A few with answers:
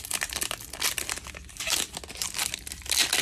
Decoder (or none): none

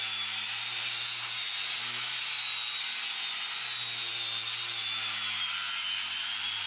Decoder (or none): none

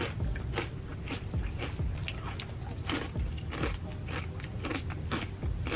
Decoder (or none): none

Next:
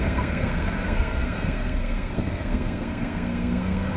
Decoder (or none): codec, SNAC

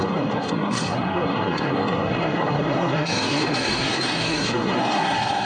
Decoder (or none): codec, SNAC